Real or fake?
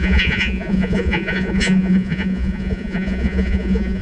fake